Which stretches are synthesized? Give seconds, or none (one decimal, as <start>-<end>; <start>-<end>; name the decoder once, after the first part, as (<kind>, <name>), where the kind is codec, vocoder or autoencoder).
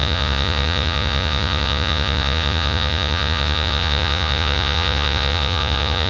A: 0.0-6.1 (vocoder, Vocos)